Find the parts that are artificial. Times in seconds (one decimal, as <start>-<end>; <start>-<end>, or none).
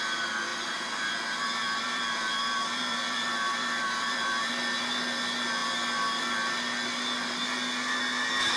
0.5-4.5